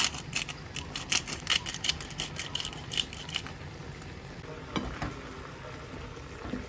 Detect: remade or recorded recorded